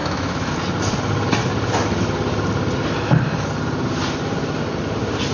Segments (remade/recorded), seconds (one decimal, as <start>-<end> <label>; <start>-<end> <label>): 0.0-0.5 remade; 0.5-5.3 recorded